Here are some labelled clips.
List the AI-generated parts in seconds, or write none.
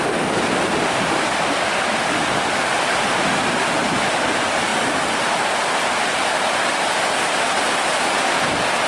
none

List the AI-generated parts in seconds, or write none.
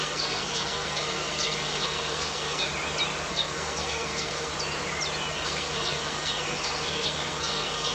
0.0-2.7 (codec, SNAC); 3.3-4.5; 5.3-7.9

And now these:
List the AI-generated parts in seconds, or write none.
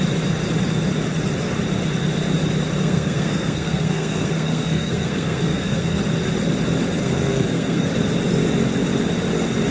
2.8-6.0 (codec, SNAC); 7.0-7.9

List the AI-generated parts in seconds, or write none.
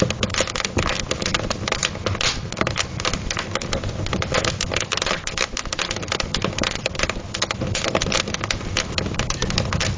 none